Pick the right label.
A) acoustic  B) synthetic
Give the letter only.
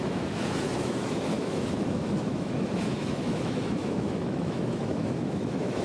B